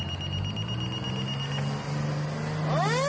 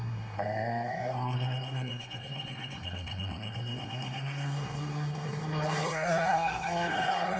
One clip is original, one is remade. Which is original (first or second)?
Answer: first